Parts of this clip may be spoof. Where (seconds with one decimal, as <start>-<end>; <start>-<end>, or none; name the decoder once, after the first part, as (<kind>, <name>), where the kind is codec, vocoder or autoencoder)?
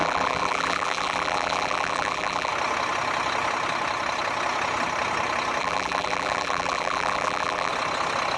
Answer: 0.0-2.5 (vocoder, BigVGAN v2); 5.6-7.7